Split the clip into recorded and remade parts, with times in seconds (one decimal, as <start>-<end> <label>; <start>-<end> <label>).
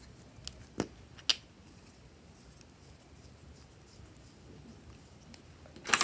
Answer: 0.0-6.0 recorded